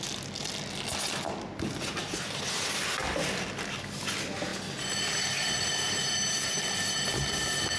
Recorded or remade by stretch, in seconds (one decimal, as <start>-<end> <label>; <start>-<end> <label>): 0.0-7.8 recorded